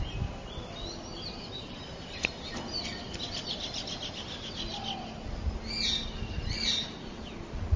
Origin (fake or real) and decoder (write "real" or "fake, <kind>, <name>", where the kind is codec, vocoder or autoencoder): real